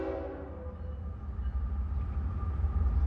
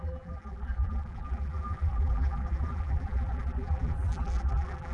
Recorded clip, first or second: first